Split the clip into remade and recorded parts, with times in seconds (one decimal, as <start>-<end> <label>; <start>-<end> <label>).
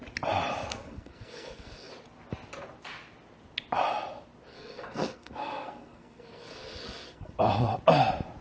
0.0-0.7 recorded; 0.7-1.9 remade; 1.9-4.5 recorded; 4.5-7.4 remade; 7.4-8.4 recorded